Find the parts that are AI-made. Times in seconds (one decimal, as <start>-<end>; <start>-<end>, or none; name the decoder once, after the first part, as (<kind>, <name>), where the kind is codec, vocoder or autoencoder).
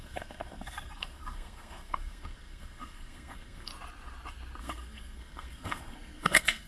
0.0-3.7 (codec, SNAC); 4.6-6.7